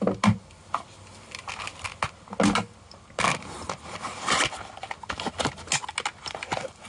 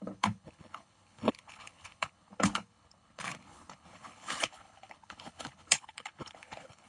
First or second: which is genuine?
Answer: first